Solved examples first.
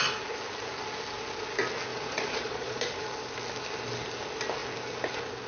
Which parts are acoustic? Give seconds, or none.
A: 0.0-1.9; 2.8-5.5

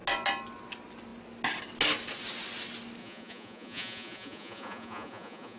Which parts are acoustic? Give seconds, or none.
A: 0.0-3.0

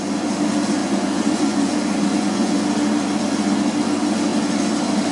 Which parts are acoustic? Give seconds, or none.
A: 0.0-0.8; 2.6-5.1

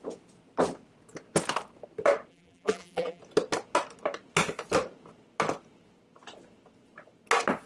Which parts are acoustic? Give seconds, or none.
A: 0.0-2.3; 3.2-7.7

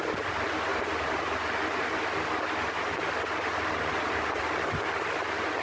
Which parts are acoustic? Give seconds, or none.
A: 0.0-0.7; 1.9-3.9; 4.4-5.6

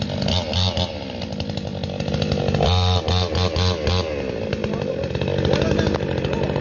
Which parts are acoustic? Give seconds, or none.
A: 0.0-6.6

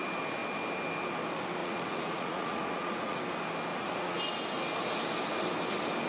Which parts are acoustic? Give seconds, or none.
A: 0.0-1.6; 3.2-3.7; 4.2-6.1

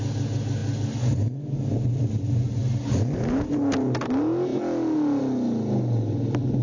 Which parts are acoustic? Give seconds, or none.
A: 0.0-6.6